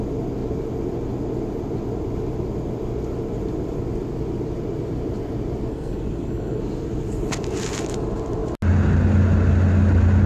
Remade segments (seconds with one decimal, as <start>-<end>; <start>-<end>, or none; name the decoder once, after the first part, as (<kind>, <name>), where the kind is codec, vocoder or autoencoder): 5.7-6.6 (codec, SNAC)